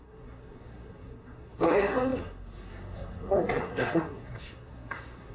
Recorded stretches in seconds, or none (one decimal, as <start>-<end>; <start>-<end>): none